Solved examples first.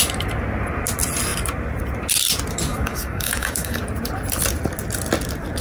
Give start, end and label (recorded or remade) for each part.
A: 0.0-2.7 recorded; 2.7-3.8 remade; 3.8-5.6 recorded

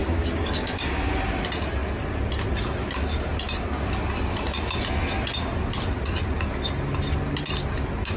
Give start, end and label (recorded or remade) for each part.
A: 0.0-1.1 remade; 1.1-8.2 recorded